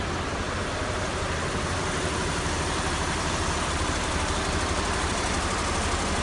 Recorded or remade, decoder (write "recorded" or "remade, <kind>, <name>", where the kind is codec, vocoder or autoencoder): remade, vocoder, BigVGAN v2